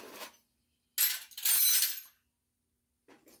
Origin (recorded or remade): recorded